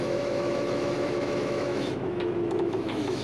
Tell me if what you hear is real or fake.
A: fake